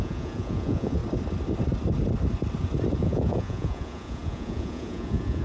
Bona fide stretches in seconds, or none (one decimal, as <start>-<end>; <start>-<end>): 1.0-3.0

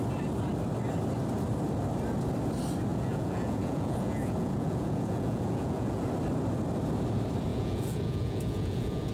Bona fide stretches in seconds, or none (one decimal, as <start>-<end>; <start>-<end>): 0.0-2.9; 6.0-7.5

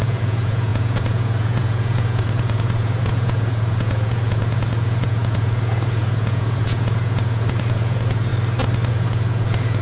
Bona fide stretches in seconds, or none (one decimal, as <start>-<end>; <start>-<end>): 8.3-8.9

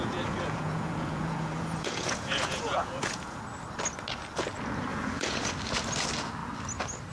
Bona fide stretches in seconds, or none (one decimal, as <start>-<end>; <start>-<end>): 3.4-4.9; 5.5-7.1

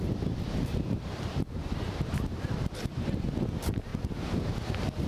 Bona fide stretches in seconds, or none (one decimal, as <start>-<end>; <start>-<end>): 0.0-5.1

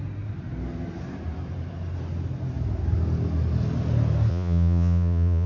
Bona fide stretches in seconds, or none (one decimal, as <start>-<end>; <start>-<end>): 0.0-4.3

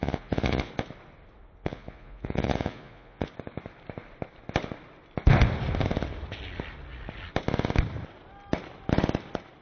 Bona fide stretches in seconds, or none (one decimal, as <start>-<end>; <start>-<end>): 0.7-1.6; 3.3-9.6

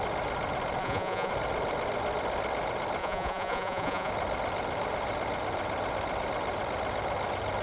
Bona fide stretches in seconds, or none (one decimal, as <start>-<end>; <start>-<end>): 0.0-0.8; 1.3-3.0; 4.1-7.6